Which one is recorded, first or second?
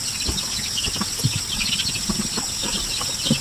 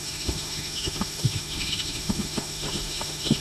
first